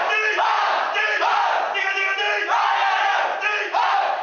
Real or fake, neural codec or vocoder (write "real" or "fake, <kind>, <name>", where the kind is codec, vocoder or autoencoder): real